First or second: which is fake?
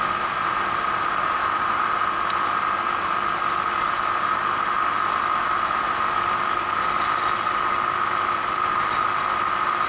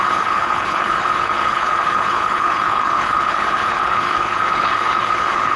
second